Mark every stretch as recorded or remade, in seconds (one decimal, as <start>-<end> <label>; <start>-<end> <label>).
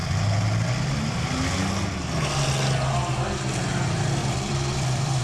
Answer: 0.0-4.2 recorded; 4.2-5.2 remade